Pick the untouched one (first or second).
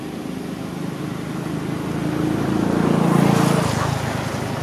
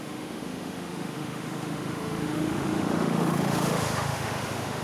first